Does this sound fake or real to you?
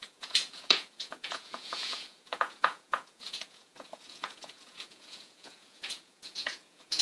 fake